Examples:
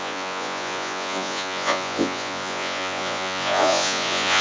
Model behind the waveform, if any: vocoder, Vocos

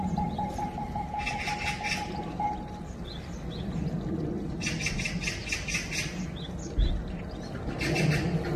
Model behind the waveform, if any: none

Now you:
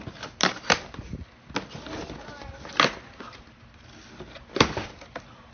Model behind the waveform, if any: none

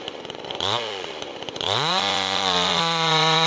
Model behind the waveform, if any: vocoder, Vocos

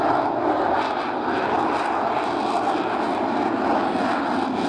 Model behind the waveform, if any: none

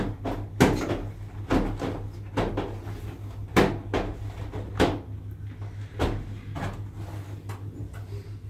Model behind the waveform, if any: none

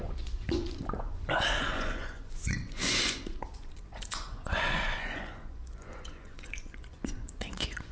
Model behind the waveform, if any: vocoder, Vocos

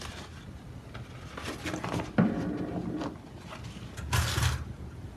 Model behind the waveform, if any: none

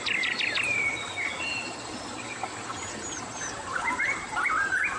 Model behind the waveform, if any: none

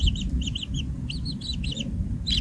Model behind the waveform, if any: none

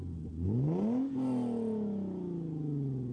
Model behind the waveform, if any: none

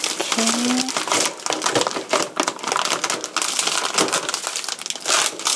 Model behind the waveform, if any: none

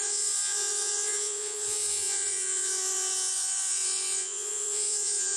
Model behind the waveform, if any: vocoder, Vocos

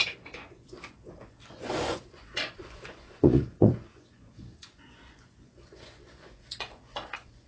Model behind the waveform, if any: vocoder, Vocos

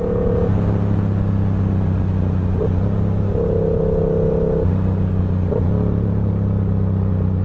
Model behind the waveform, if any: none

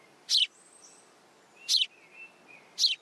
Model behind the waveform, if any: none